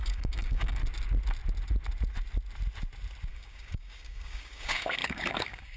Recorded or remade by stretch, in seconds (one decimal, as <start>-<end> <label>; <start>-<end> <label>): 0.0-0.8 remade; 0.8-3.3 recorded; 3.3-5.8 remade